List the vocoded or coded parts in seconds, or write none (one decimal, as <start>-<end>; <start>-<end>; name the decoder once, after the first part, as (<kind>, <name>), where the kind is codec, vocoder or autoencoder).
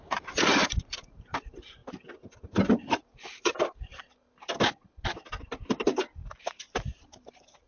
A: 0.0-1.8 (vocoder, BigVGAN v2); 3.0-3.9; 6.6-7.7